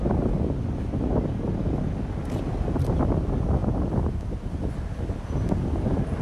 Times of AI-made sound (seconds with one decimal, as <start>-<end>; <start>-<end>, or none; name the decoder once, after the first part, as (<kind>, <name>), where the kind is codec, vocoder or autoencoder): none